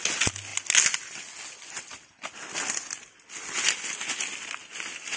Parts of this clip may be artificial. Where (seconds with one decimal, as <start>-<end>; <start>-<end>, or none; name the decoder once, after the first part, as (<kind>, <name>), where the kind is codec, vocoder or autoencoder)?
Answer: none